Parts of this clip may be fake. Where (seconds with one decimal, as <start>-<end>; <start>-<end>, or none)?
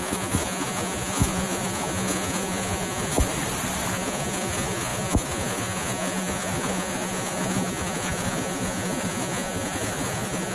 0.0-3.3; 3.9-10.5